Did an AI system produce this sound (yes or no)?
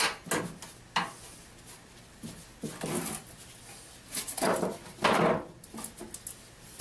no